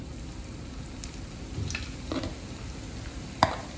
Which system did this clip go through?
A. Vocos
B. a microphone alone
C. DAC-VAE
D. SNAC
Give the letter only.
B